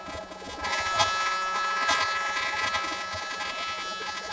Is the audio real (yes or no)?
no